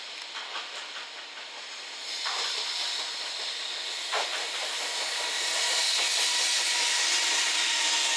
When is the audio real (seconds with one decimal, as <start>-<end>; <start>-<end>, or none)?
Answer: 0.0-8.2